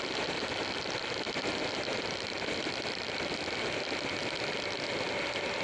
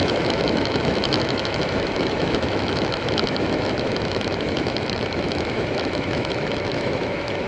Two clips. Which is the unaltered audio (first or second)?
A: first